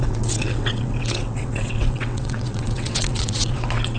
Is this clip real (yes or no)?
no